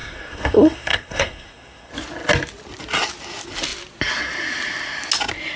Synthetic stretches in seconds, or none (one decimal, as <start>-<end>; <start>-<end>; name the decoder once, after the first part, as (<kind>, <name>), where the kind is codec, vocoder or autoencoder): 0.0-1.9 (codec, SNAC)